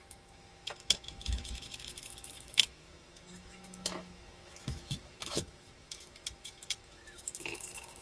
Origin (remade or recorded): remade